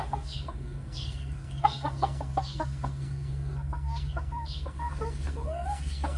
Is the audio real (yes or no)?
no